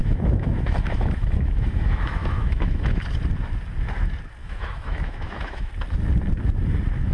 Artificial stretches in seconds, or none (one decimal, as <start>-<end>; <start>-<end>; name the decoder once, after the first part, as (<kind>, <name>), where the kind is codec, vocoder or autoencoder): 0.0-3.0 (autoencoder, DAC-VAE); 4.4-5.7